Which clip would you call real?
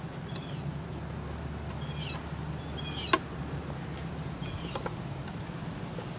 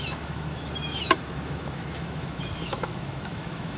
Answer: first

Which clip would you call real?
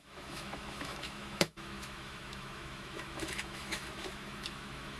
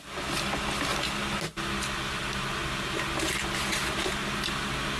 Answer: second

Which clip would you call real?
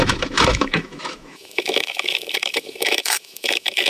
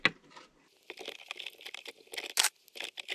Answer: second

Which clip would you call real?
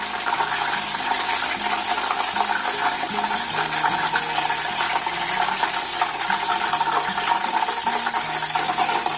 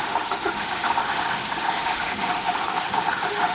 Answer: first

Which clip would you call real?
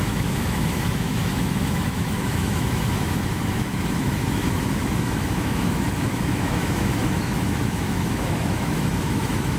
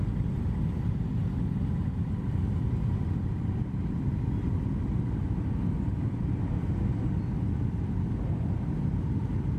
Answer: second